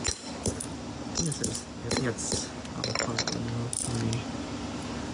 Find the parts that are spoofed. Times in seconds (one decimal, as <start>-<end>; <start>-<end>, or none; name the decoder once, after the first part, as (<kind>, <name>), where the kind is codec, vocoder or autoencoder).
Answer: none